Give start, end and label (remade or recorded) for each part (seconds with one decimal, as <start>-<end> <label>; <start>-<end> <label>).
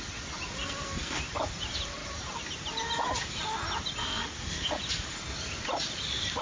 0.0-0.6 recorded; 0.6-1.2 remade; 1.2-4.0 recorded; 4.0-4.7 remade; 4.7-6.4 recorded